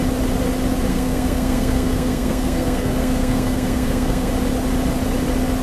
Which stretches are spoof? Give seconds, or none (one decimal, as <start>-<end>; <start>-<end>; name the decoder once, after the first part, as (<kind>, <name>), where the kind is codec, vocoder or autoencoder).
0.9-4.3 (codec, SNAC)